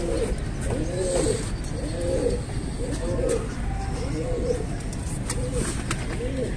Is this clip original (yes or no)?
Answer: yes